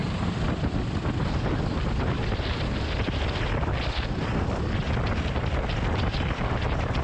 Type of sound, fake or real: real